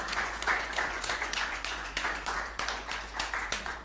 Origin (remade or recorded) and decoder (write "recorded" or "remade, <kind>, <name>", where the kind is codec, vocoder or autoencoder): remade, vocoder, Vocos